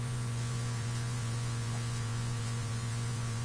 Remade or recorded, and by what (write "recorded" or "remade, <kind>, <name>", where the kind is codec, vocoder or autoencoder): remade, vocoder, Vocos